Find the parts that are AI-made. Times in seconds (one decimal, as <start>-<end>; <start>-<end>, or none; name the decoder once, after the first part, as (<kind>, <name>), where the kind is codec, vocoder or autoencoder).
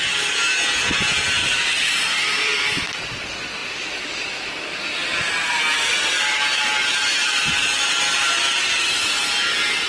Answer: 1.4-2.9 (vocoder, BigVGAN v2); 5.9-9.2